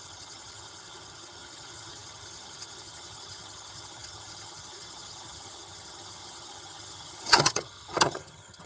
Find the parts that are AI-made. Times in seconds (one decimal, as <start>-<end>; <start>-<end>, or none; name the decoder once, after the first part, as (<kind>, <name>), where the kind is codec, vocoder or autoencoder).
0.0-8.7 (vocoder, HiFi-GAN)